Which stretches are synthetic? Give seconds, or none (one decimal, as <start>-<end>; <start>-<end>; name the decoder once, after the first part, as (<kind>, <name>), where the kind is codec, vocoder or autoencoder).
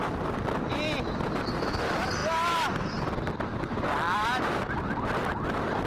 none